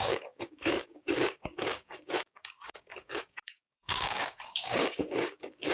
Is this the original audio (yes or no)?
no